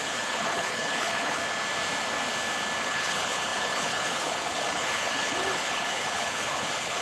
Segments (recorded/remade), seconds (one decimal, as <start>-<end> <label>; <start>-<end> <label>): 0.0-1.4 remade; 1.4-2.8 recorded; 2.8-7.0 remade